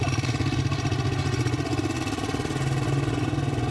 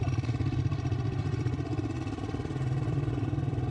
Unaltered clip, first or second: first